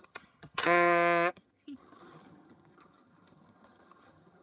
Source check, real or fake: fake